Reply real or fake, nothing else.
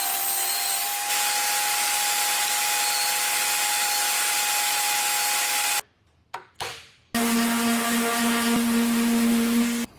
real